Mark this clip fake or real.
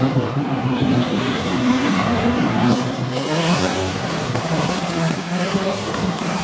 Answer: fake